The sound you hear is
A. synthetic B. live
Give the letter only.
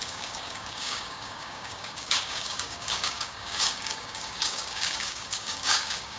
A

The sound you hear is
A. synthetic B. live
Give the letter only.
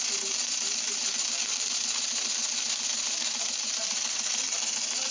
B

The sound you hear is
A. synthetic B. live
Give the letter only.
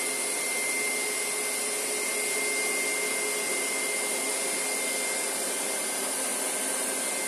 B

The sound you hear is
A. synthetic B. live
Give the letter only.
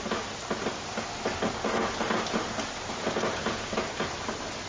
B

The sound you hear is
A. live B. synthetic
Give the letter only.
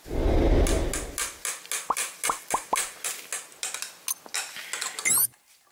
A